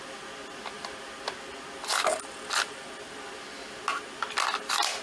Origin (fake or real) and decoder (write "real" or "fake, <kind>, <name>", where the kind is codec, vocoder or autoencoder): real